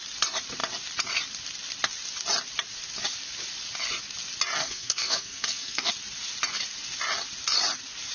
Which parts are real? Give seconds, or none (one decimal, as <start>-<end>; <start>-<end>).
0.0-4.6; 5.9-8.1